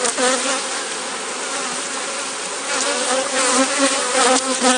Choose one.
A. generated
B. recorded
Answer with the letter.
B